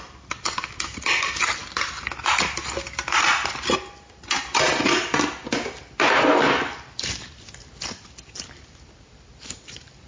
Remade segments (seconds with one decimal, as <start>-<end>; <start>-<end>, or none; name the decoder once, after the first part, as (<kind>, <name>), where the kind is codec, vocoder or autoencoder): none